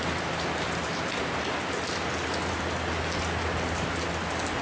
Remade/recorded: recorded